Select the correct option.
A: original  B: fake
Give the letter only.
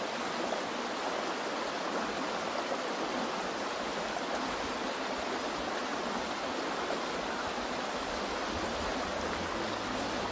A